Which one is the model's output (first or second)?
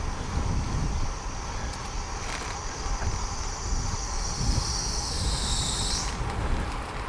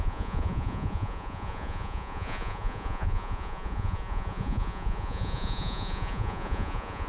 second